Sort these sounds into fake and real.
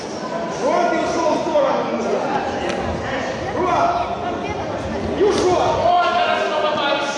real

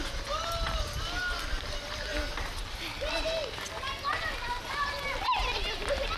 real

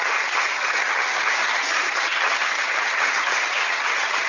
fake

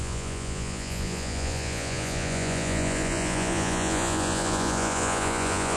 fake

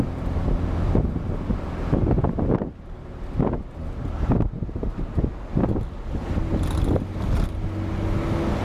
real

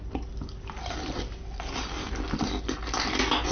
real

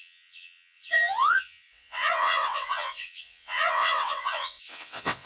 fake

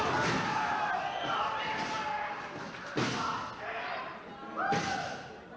real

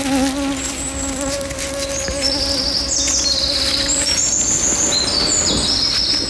real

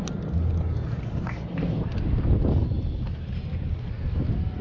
real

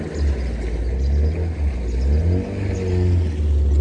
real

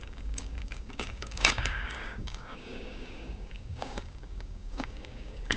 fake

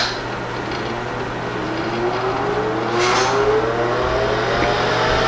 real